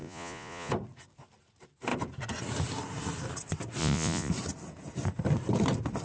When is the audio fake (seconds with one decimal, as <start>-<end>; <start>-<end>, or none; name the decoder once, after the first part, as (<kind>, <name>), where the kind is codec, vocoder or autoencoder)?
0.0-0.7 (vocoder, Vocos); 3.8-4.3